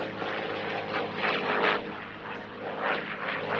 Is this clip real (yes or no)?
yes